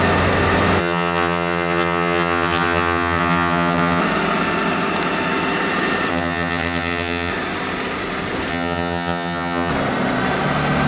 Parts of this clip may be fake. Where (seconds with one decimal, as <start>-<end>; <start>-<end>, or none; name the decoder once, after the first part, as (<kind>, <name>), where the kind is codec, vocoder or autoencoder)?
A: 0.8-4.0 (vocoder, HiFi-GAN); 6.1-7.3; 8.5-9.7